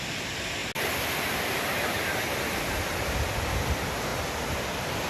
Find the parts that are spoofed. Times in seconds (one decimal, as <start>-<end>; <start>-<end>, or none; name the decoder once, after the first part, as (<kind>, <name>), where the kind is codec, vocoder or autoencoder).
none